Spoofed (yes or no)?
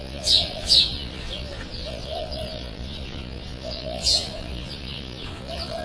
yes